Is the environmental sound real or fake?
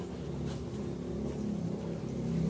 real